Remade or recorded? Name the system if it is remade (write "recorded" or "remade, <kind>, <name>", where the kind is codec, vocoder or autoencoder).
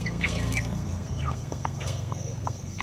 remade, codec, SNAC